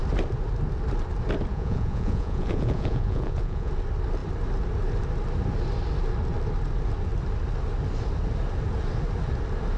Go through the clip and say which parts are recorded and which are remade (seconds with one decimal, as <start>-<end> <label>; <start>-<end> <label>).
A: 0.0-1.5 recorded; 1.5-3.7 remade; 3.7-9.8 recorded